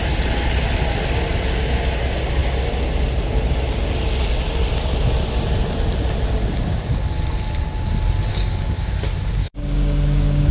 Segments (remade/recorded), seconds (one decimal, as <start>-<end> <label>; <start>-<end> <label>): 0.0-8.3 recorded; 8.3-8.9 remade; 8.9-9.4 recorded; 9.4-10.5 remade